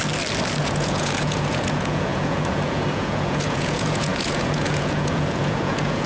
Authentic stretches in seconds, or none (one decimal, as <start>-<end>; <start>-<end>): 0.0-0.6

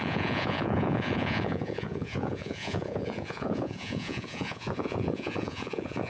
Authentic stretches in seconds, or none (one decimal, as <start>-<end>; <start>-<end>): none

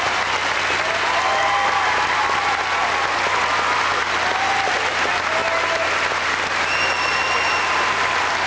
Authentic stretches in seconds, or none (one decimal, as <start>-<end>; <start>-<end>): 0.0-8.5